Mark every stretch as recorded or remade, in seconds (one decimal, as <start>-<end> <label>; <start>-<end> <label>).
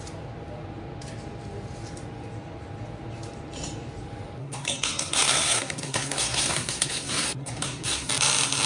0.0-4.4 recorded; 4.4-8.1 remade; 8.1-8.7 recorded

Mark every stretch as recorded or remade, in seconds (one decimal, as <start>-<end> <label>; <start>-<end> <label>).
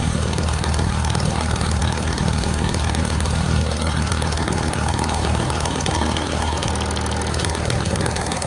0.0-6.7 remade; 6.7-7.3 recorded; 7.3-8.5 remade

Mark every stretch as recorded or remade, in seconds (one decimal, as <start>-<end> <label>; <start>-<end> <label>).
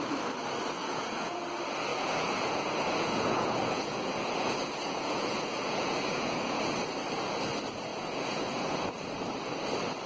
0.0-0.8 recorded; 0.8-1.4 remade; 1.4-1.9 recorded; 1.9-6.6 remade; 6.6-7.9 recorded; 7.9-8.9 remade; 8.9-10.1 recorded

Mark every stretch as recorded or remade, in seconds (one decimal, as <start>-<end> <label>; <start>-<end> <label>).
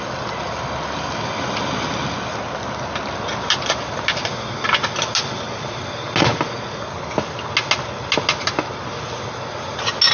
0.0-10.1 recorded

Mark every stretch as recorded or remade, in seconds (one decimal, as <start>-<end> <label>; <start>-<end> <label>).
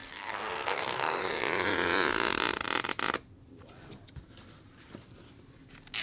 0.0-1.2 remade; 1.2-6.0 recorded